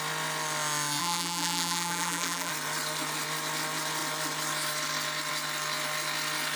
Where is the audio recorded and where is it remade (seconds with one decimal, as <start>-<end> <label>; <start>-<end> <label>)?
0.0-1.0 recorded; 1.0-2.5 remade; 2.5-6.6 recorded